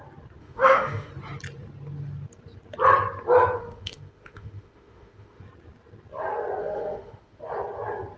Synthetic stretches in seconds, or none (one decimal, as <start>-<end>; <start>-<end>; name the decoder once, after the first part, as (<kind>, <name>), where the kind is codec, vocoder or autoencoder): 0.4-1.1 (autoencoder, DAC-VAE); 3.6-5.4; 6.6-7.4